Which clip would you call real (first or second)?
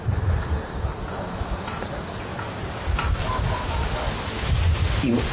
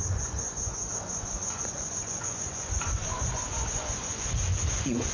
first